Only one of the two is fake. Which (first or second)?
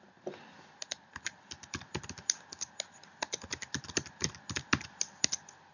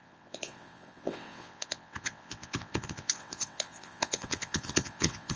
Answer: second